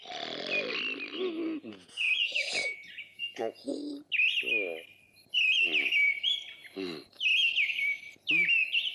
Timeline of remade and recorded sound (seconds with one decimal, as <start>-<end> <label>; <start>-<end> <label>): 0.0-1.7 recorded; 1.7-3.9 remade; 3.9-8.9 recorded